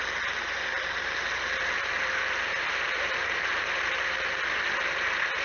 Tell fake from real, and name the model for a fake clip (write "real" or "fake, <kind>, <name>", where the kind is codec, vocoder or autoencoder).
real